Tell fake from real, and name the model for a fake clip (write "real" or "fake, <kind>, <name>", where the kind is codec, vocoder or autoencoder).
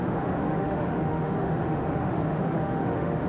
fake, autoencoder, DAC-VAE